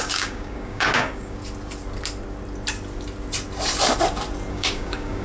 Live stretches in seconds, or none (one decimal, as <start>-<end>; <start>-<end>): 1.4-4.5